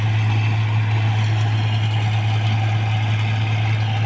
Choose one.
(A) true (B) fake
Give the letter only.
A